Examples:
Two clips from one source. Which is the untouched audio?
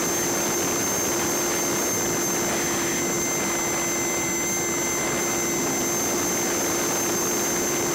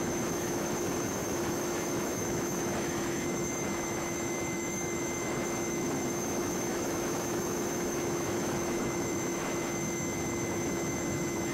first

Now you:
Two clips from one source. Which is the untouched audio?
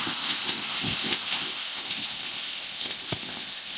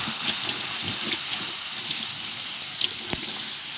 second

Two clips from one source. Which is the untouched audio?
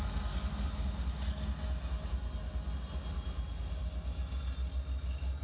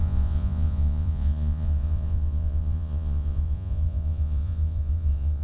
first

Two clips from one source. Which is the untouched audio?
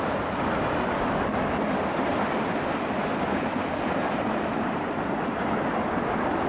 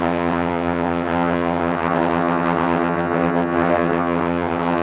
first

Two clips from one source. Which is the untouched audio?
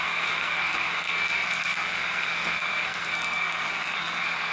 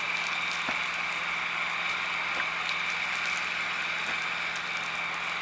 second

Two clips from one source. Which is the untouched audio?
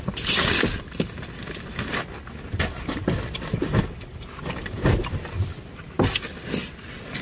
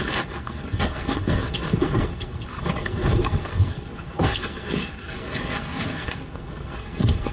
first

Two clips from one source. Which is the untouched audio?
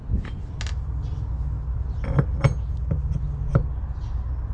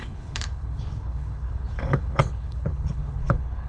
first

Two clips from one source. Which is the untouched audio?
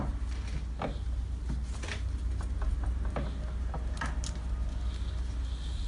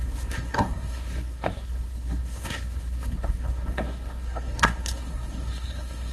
first